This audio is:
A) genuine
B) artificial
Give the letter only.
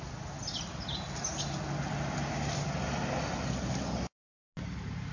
A